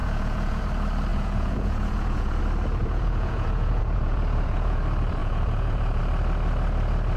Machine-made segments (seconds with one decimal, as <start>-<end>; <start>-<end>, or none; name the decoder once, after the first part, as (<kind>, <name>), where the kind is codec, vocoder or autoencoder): 0.0-0.6 (vocoder, Vocos); 1.1-2.4; 2.8-4.8; 5.2-6.0